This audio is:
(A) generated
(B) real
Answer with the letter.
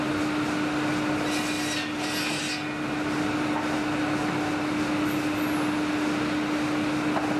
B